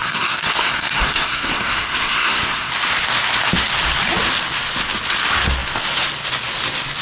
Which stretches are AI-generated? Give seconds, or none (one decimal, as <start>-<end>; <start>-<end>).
0.0-2.7

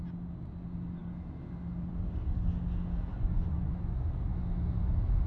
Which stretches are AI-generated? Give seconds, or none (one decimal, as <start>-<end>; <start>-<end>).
3.1-3.8